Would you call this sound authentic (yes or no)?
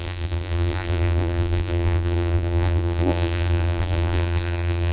no